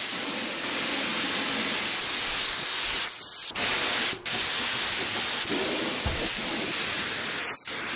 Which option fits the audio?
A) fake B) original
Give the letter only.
B